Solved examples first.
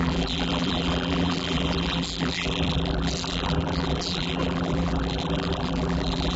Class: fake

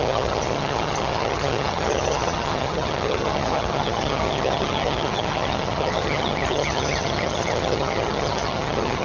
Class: fake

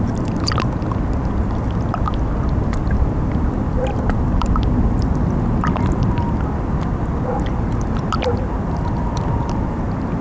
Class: real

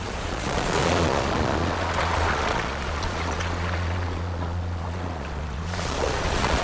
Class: fake